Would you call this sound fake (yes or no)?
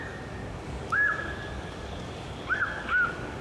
yes